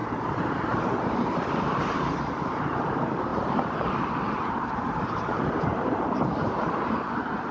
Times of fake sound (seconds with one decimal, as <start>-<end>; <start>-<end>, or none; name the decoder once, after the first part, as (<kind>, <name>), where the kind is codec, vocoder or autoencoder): 0.0-7.5 (vocoder, BigVGAN v2)